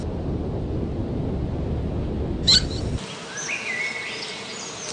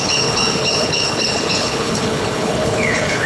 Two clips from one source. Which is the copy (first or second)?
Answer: second